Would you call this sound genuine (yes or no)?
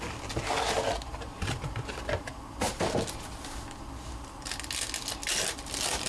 yes